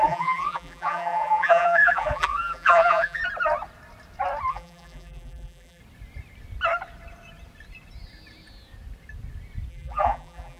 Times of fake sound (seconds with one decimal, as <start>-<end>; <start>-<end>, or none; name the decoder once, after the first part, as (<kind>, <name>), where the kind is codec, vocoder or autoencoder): 0.0-3.2 (vocoder, BigVGAN v2); 4.5-5.8; 9.7-10.6